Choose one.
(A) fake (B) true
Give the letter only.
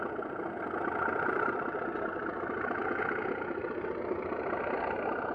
B